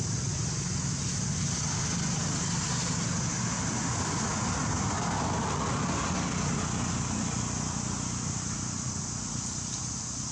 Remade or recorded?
recorded